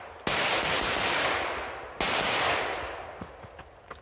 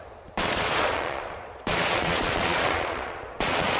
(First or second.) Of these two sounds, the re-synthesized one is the second